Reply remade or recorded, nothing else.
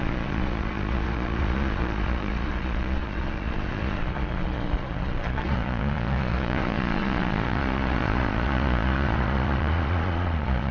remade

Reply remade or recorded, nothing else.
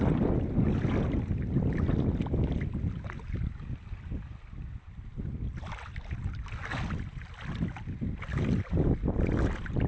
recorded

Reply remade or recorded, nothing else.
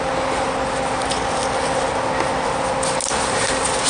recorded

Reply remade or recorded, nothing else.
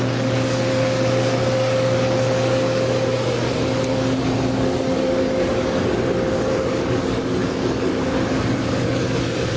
remade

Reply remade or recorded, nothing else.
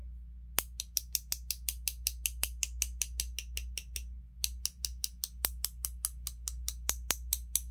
recorded